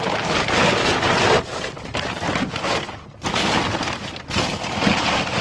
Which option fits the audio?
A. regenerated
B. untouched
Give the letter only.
B